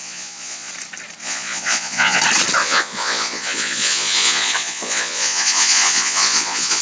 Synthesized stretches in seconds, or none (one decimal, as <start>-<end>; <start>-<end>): 0.0-0.7; 1.2-2.2; 2.6-6.8